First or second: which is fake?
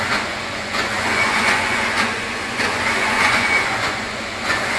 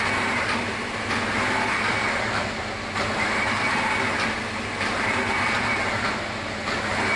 first